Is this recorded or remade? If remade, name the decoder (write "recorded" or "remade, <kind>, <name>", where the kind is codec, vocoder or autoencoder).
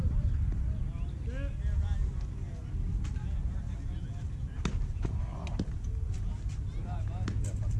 recorded